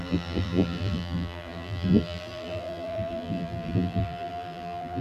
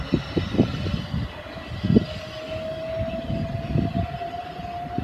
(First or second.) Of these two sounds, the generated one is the first